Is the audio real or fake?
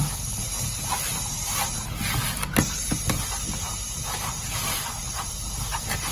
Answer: real